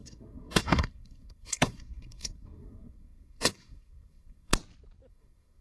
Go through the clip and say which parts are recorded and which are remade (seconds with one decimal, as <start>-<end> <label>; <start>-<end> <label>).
0.0-4.5 remade; 4.5-5.1 recorded; 5.1-5.6 remade